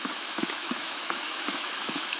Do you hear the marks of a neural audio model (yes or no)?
yes